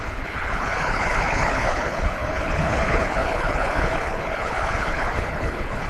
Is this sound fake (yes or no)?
yes